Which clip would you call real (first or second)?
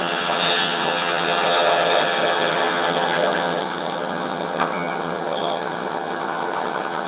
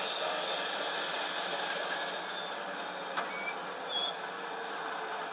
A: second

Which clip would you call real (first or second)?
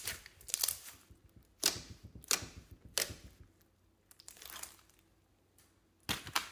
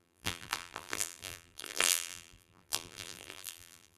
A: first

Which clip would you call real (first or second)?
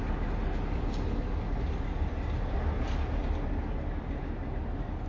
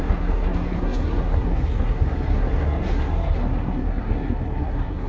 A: first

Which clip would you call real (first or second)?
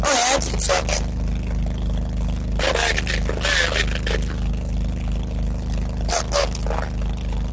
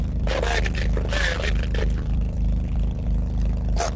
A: first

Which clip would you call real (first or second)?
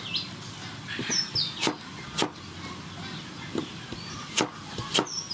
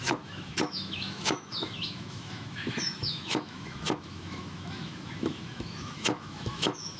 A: first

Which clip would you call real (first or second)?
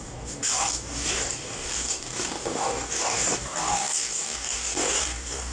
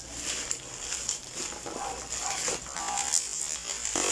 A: second